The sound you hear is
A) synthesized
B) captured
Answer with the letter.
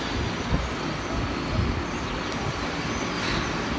B